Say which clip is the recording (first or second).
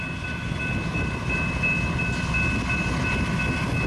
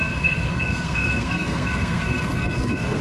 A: first